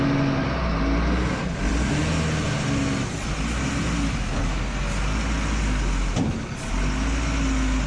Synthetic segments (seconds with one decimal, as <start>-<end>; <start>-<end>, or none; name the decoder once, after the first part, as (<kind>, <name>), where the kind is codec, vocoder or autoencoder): none